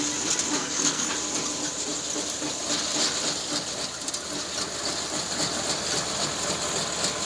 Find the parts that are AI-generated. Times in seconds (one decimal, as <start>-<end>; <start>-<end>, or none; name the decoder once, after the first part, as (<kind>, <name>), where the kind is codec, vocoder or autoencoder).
0.6-1.1 (codec, SNAC)